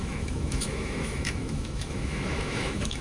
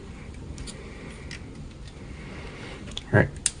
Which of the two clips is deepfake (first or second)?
first